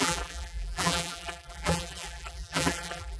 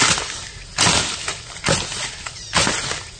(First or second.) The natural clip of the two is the second